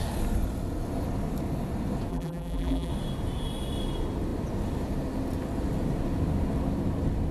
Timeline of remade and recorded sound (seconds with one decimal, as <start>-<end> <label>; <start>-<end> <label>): 0.0-2.1 recorded; 2.1-2.9 remade; 2.9-7.3 recorded